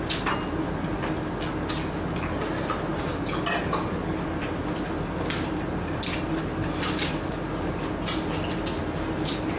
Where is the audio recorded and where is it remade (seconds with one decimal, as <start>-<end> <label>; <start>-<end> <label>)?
0.0-9.6 recorded